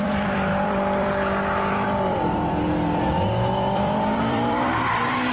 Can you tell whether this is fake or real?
fake